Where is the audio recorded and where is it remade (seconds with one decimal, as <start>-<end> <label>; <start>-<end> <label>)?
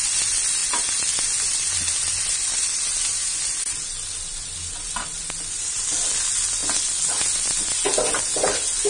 0.0-2.1 recorded; 2.1-2.8 remade; 2.8-5.1 recorded; 5.1-5.8 remade; 5.8-8.9 recorded